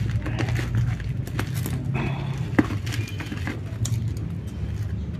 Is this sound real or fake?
real